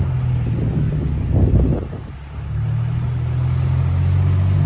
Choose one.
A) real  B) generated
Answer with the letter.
A